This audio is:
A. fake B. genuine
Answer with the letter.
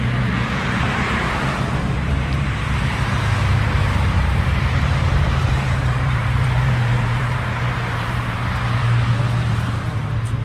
A